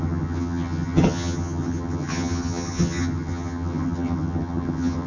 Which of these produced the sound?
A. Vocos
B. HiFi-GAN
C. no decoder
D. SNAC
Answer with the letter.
B